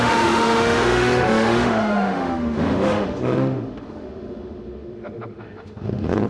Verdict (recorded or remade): remade